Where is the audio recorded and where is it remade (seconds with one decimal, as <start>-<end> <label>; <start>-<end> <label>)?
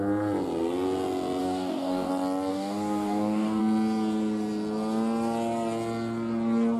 0.0-1.4 recorded; 1.4-2.1 remade; 2.1-2.5 recorded; 2.5-3.6 remade; 3.6-6.8 recorded